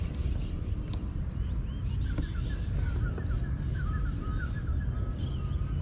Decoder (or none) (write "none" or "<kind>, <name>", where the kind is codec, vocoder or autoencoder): none